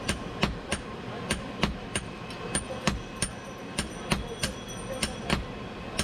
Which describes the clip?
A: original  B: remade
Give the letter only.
A